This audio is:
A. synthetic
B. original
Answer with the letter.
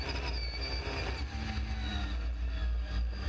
B